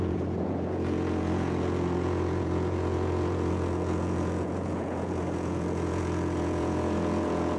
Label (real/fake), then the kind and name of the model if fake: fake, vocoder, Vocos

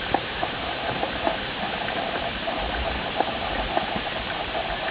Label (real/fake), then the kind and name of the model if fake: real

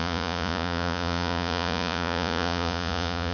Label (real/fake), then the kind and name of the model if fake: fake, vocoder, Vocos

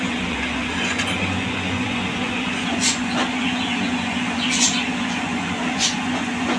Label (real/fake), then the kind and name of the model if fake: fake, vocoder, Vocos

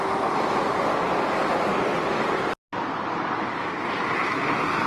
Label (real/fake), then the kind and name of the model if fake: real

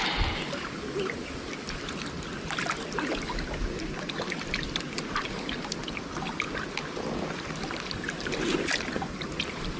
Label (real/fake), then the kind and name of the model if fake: real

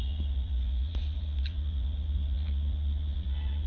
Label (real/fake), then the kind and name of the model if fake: fake, vocoder, Vocos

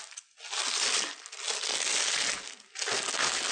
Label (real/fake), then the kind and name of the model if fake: real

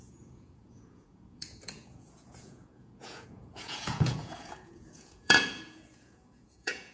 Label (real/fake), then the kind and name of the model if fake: fake, vocoder, Vocos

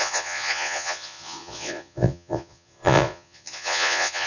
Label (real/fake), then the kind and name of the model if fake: fake, vocoder, Vocos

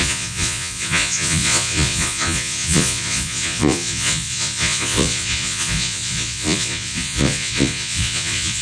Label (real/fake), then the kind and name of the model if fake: fake, vocoder, Vocos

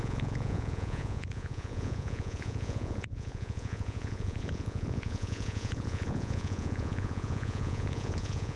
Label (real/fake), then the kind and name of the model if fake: fake, vocoder, Vocos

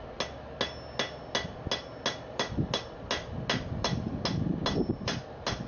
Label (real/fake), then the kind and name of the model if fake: real